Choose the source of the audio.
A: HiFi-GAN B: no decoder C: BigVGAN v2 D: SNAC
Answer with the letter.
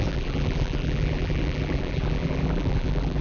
C